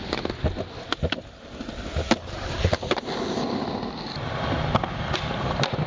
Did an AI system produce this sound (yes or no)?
no